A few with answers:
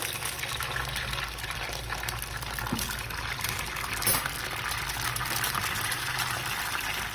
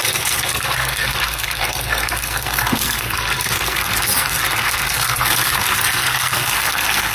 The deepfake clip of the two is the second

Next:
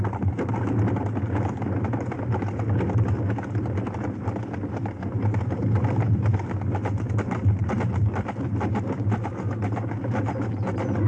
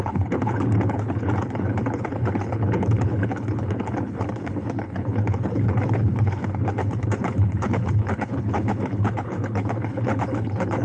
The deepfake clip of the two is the second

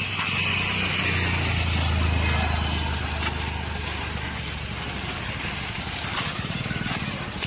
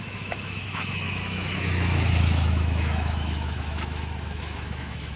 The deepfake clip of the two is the second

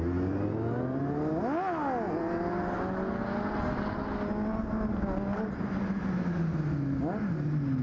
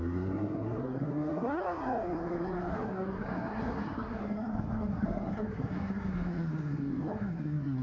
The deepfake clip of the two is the second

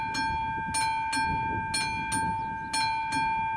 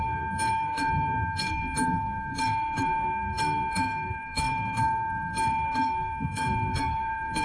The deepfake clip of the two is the second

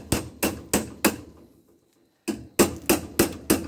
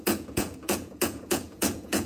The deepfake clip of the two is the second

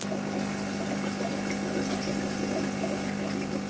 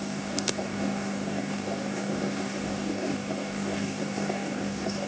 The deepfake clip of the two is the second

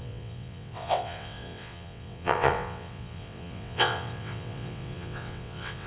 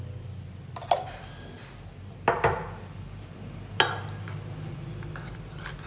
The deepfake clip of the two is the first